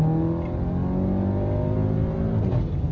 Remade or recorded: recorded